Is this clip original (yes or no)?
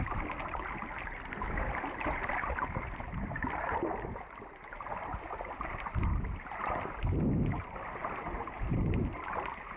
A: yes